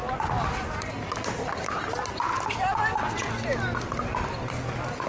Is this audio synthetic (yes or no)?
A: no